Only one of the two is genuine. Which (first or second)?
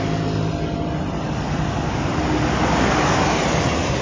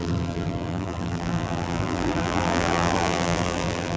first